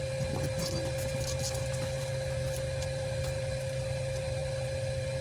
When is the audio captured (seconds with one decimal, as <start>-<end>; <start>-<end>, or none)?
0.0-5.2